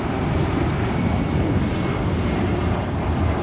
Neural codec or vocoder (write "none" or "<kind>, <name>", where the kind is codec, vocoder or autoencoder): none